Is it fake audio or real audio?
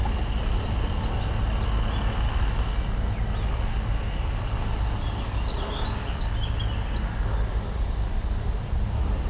real